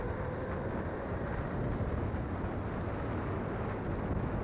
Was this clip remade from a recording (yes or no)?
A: no